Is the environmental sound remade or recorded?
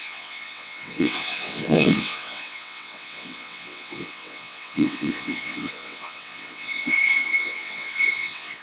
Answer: remade